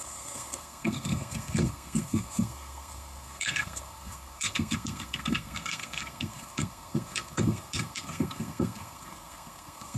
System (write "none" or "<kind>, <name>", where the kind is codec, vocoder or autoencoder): codec, SNAC